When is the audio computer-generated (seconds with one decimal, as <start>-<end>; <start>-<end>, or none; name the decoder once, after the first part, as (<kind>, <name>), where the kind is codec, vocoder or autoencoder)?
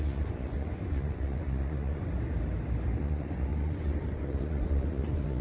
0.0-2.0 (vocoder, Vocos); 3.0-5.4